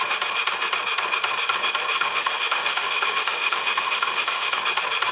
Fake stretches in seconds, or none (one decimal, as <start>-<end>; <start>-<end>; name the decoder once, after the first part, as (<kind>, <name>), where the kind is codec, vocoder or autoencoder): 1.9-4.6 (autoencoder, DAC-VAE)